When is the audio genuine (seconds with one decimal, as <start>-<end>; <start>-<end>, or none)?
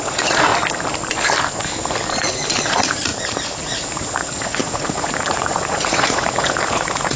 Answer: 0.5-2.7; 3.1-3.6